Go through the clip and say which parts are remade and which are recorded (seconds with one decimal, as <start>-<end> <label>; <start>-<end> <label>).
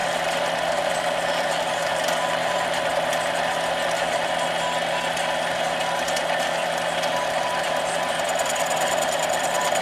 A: 0.0-0.8 recorded; 0.8-2.9 remade; 2.9-7.5 recorded; 7.5-9.8 remade